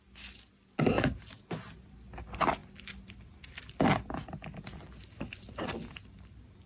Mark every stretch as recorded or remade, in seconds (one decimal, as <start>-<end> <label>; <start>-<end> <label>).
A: 0.0-2.6 recorded; 2.6-6.7 remade